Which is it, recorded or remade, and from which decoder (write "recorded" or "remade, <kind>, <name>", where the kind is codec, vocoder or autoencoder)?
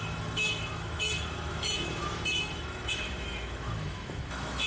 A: remade, autoencoder, DAC-VAE